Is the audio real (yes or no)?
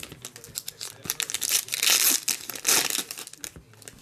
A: yes